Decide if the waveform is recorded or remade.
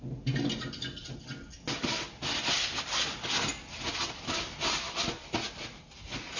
recorded